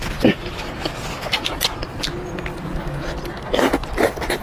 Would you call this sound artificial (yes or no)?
no